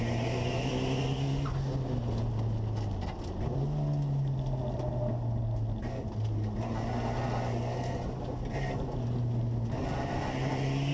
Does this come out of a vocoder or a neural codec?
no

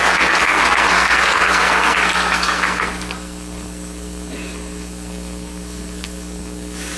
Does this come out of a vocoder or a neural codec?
yes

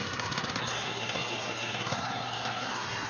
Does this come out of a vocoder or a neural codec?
yes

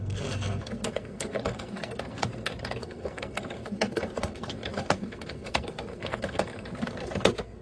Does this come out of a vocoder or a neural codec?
yes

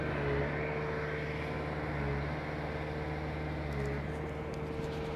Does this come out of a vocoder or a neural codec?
no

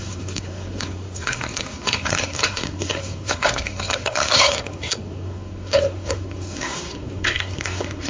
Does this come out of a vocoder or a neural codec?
yes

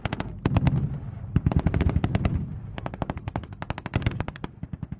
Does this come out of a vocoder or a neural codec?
no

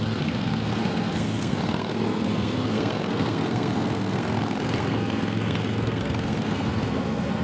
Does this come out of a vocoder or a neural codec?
yes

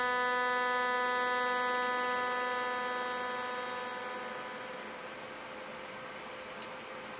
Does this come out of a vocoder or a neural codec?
no